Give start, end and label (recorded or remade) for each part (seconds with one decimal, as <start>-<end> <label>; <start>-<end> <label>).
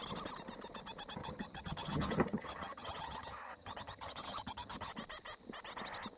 0.0-1.2 recorded; 1.2-4.9 remade; 4.9-6.2 recorded